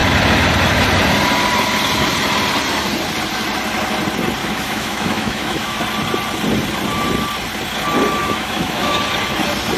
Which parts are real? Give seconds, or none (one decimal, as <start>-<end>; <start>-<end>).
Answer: 0.0-4.4; 5.8-8.2; 9.0-9.8